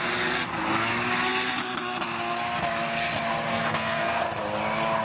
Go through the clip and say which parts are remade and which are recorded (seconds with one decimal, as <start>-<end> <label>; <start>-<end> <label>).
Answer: 0.0-3.5 recorded; 3.5-4.2 remade; 4.2-5.0 recorded